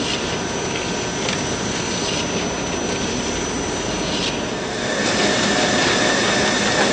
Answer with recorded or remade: recorded